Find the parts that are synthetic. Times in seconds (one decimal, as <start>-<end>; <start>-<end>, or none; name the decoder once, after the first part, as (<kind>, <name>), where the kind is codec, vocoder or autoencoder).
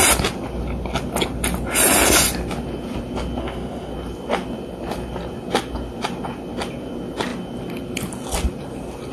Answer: 3.4-3.9 (autoencoder, DAC-VAE)